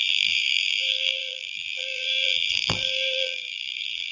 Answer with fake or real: fake